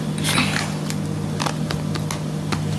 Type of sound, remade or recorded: recorded